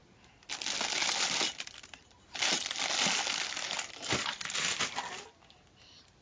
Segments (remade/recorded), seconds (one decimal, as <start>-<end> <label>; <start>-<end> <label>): 0.0-6.2 recorded